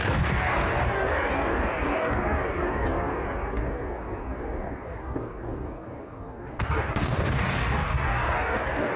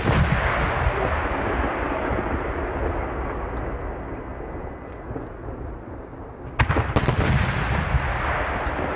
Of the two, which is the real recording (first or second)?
second